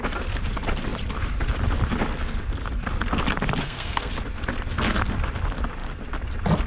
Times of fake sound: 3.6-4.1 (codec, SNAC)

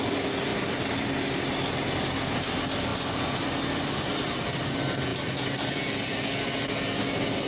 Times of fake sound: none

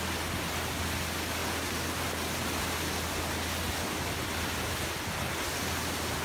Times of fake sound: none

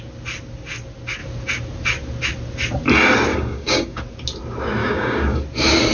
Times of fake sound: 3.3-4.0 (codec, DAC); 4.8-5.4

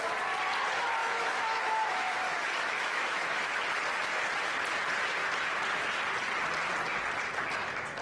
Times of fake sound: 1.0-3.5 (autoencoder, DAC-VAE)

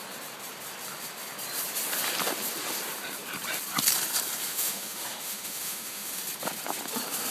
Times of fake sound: 4.5-6.2 (autoencoder, DAC-VAE)

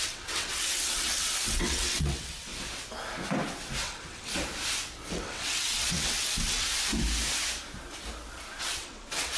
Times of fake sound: 0.0-2.5 (vocoder, WaveNeXt); 3.8-4.3; 5.1-6.7; 8.6-9.4

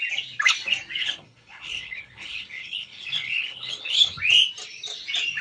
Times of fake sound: 1.0-4.2 (codec, HILCodec)